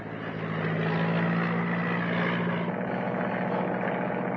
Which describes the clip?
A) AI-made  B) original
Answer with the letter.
B